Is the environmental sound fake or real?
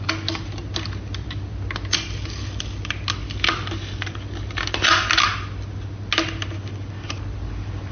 real